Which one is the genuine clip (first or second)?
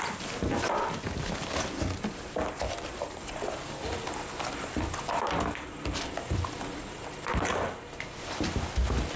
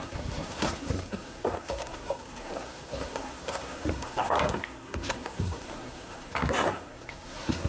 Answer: first